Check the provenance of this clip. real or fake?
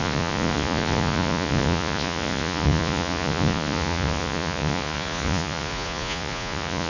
fake